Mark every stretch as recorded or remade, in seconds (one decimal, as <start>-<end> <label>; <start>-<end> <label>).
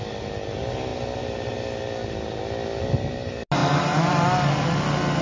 0.0-5.2 recorded